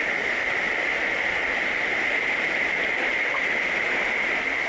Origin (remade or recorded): recorded